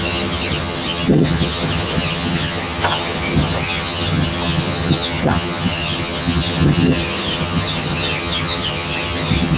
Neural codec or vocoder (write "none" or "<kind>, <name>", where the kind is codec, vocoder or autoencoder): vocoder, HiFi-GAN